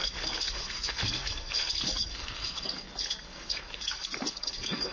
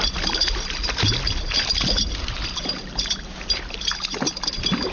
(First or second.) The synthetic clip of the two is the first